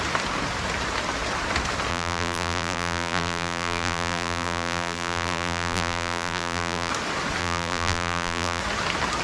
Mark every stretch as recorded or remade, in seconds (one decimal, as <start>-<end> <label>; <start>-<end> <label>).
0.0-1.9 recorded; 1.9-6.9 remade; 6.9-7.4 recorded; 7.4-8.6 remade; 8.6-9.2 recorded